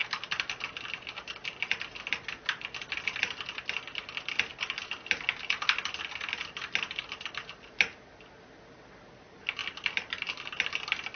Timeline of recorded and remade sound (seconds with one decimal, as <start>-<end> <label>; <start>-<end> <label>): 0.0-11.2 recorded